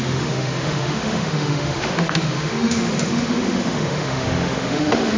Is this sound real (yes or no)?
no